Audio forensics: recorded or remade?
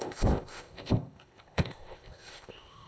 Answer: remade